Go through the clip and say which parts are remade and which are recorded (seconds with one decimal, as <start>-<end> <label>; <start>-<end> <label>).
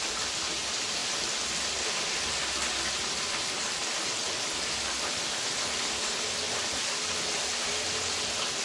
0.0-8.6 recorded